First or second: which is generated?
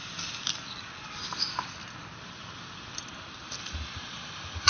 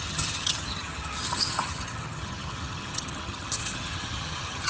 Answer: second